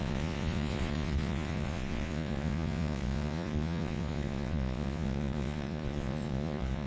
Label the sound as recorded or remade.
remade